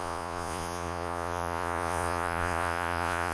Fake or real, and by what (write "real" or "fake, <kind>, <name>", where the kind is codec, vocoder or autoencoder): fake, vocoder, Vocos